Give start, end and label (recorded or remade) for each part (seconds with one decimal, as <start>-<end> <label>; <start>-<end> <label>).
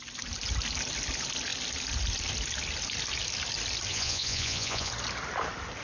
0.0-3.9 recorded; 3.9-4.9 remade; 4.9-5.8 recorded